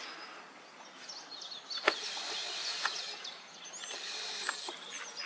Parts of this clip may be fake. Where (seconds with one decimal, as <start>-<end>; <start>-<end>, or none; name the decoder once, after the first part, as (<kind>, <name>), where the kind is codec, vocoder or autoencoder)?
2.6-3.6 (vocoder, Vocos)